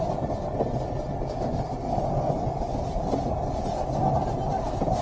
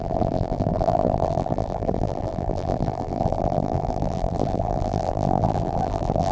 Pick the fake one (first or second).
second